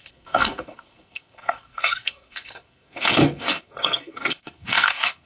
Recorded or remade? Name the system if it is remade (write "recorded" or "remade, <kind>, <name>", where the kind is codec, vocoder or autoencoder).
remade, codec, SNAC